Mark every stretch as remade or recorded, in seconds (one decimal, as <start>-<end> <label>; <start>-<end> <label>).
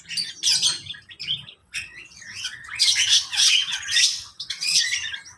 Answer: 0.0-1.6 recorded; 1.6-4.8 remade; 4.8-5.4 recorded